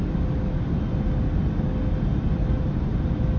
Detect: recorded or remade recorded